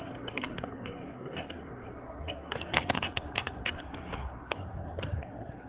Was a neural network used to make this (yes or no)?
yes